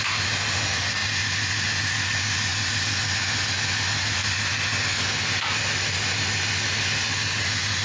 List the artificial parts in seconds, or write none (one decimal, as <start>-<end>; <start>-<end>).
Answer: none